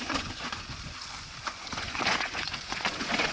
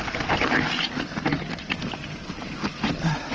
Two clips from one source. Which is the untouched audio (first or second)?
second